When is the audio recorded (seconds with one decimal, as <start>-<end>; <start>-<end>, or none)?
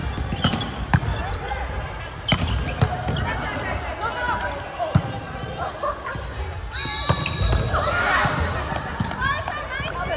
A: 0.0-10.2